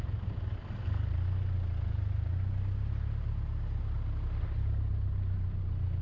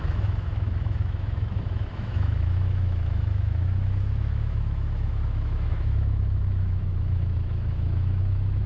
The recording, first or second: first